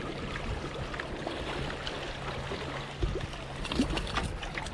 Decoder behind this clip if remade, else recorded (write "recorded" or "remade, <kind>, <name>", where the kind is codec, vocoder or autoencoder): recorded